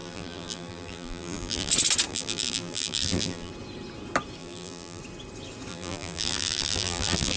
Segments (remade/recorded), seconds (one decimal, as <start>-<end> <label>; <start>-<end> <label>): 0.0-1.7 remade; 1.7-2.1 recorded; 2.1-3.5 remade; 3.5-4.4 recorded; 4.4-5.0 remade; 5.0-5.7 recorded; 5.7-7.4 remade